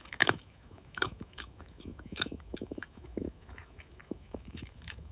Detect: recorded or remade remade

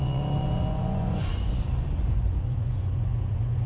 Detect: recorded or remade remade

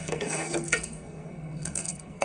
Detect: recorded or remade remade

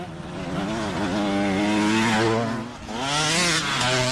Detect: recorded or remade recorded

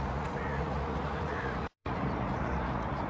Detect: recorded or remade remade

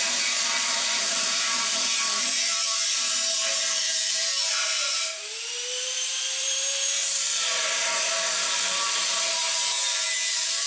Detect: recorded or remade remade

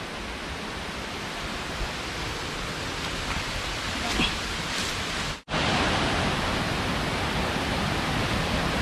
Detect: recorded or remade recorded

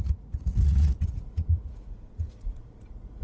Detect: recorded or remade remade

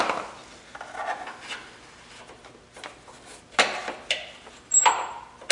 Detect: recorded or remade recorded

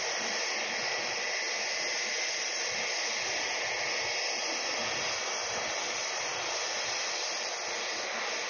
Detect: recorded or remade recorded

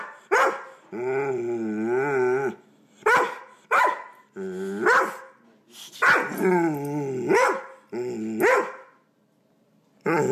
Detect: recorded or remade recorded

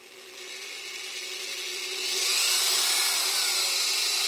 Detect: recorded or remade recorded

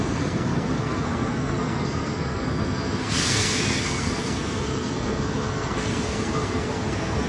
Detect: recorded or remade remade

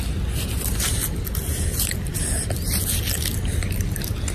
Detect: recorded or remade recorded